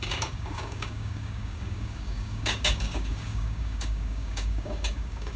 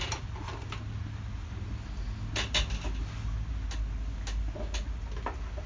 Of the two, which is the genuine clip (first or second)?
second